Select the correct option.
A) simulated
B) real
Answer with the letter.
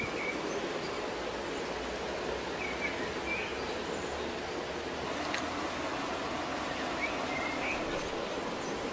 B